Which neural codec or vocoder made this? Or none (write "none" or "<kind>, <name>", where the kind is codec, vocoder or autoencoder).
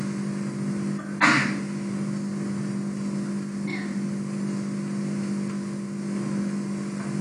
none